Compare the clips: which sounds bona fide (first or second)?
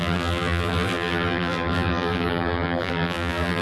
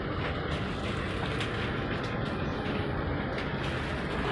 second